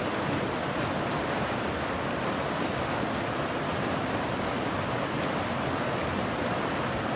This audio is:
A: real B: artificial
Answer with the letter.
A